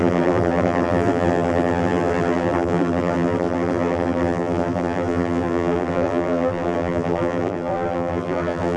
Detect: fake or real fake